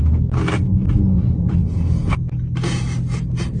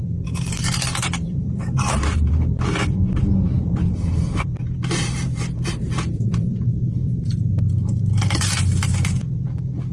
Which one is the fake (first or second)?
second